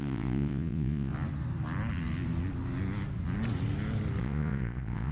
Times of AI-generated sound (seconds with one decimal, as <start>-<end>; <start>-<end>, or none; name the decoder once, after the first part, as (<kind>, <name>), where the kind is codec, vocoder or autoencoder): 0.0-1.1 (vocoder, Vocos); 4.2-5.1